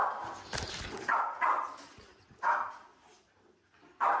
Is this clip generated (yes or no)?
no